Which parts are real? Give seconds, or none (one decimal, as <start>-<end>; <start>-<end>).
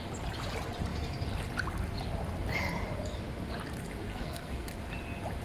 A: 0.0-4.1; 4.7-5.4